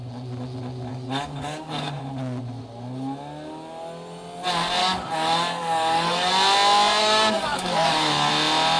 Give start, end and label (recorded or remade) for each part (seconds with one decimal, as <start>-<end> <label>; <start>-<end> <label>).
0.0-0.9 recorded; 0.9-2.0 remade; 2.0-4.8 recorded; 4.8-6.3 remade; 6.3-7.0 recorded; 7.0-8.3 remade; 8.3-8.8 recorded